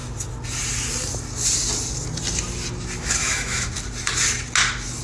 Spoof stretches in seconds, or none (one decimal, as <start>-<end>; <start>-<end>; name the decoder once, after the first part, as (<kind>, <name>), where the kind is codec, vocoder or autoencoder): 3.0-3.7 (autoencoder, DAC-VAE)